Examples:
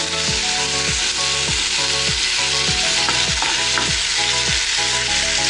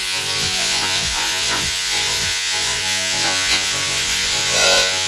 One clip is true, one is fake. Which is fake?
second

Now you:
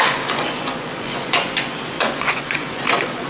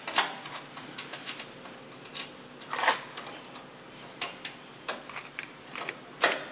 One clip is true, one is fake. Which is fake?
first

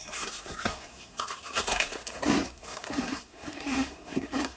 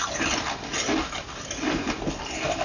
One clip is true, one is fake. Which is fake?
first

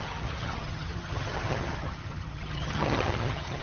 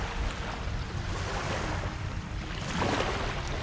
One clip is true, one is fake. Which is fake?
first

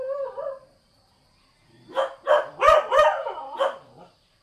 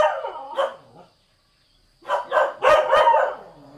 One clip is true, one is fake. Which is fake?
first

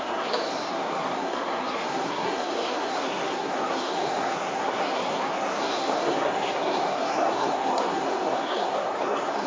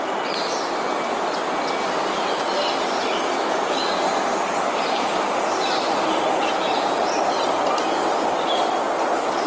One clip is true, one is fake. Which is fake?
first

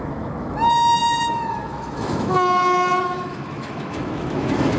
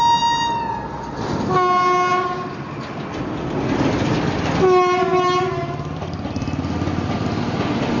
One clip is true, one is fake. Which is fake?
first